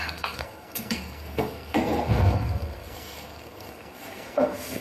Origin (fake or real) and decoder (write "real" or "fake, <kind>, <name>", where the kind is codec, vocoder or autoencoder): fake, codec, SNAC